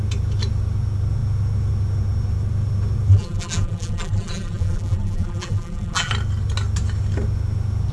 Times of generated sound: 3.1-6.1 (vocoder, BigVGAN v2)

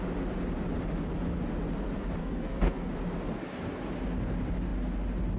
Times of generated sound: 2.2-2.9 (codec, SNAC)

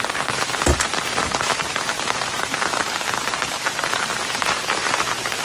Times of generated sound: 0.0-5.4 (vocoder, BigVGAN v2)